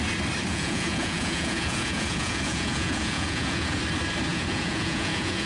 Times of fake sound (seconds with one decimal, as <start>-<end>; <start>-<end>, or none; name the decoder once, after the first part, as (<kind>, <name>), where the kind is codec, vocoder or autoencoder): 0.5-3.8 (vocoder, Vocos); 4.3-5.5